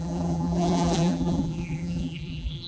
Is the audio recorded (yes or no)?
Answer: no